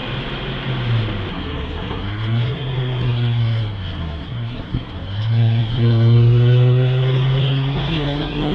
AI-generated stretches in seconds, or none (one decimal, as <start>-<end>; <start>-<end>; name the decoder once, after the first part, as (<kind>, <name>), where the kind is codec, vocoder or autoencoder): 1.3-8.5 (codec, SNAC)